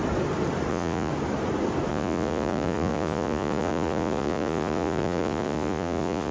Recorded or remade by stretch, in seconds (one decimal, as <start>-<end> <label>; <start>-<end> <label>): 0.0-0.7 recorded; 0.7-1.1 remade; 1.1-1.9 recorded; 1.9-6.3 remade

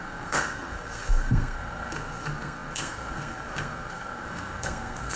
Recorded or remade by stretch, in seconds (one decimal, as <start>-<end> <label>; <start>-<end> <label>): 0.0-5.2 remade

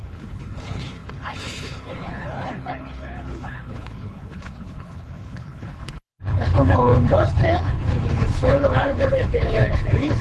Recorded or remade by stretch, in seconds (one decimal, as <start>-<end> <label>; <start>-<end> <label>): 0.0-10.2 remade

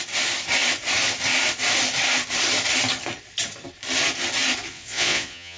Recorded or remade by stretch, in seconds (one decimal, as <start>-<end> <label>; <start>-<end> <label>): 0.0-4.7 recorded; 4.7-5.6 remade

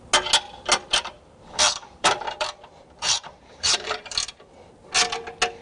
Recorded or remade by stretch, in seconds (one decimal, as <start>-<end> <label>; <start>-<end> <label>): 0.0-0.9 recorded; 0.9-4.3 remade; 4.3-5.6 recorded

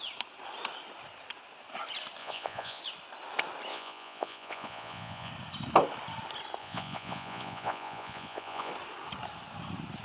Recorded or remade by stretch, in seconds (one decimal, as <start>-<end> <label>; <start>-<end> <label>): 0.0-2.2 recorded; 2.2-2.8 remade; 2.8-3.7 recorded; 3.7-5.3 remade; 5.3-6.6 recorded; 6.6-8.7 remade; 8.7-10.0 recorded

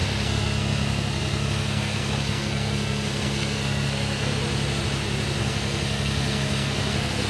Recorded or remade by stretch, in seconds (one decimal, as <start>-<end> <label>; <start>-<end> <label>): 0.0-4.4 remade; 4.4-5.4 recorded; 5.4-7.3 remade